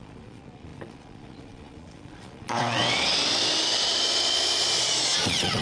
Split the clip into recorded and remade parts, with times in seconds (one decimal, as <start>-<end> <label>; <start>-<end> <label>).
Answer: 0.0-2.8 remade; 2.8-4.8 recorded; 4.8-5.6 remade